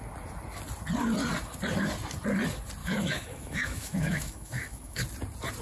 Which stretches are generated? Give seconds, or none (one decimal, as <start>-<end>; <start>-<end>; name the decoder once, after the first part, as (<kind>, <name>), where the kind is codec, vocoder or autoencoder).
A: 2.8-5.0 (autoencoder, DAC-VAE)